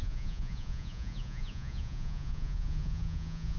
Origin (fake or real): fake